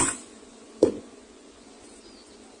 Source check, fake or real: fake